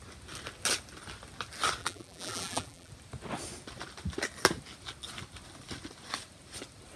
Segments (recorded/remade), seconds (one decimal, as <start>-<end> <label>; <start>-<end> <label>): 0.0-1.8 recorded; 1.8-2.9 remade; 2.9-7.0 recorded